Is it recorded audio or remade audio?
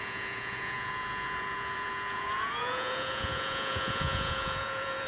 remade